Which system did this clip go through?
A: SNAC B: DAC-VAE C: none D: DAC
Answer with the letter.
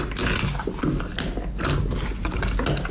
C